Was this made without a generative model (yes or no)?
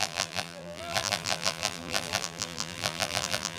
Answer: no